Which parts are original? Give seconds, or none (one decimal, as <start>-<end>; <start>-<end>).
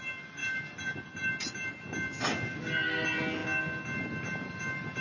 0.0-5.0